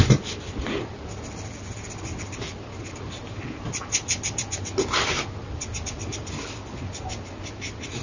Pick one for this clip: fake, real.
real